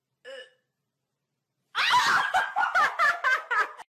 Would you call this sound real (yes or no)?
yes